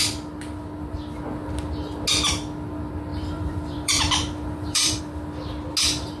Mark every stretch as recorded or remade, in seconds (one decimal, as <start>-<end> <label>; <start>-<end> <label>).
0.0-3.1 recorded; 3.1-5.0 remade; 5.0-6.2 recorded